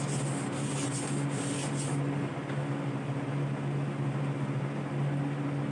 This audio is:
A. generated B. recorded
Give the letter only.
B